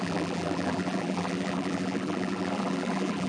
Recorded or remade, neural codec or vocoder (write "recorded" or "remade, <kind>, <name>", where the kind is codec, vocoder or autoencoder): remade, vocoder, BigVGAN v2